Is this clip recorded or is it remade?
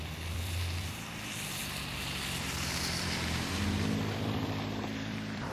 remade